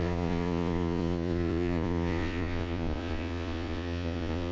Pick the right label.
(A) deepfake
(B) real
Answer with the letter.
A